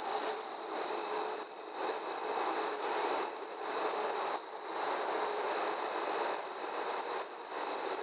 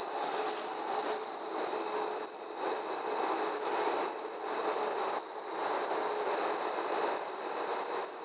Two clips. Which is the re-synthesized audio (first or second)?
first